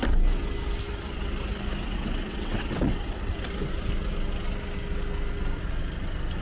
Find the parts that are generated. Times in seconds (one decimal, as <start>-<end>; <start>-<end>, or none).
1.8-3.3